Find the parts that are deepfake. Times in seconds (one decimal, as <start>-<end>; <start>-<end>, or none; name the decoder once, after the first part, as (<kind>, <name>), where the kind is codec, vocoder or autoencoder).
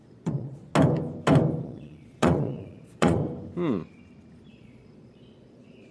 0.0-0.7 (vocoder, Vocos); 1.6-3.2; 4.5-5.9